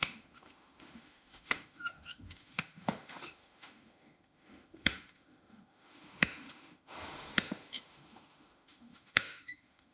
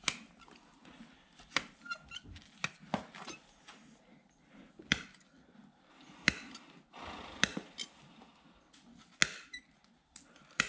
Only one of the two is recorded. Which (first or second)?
second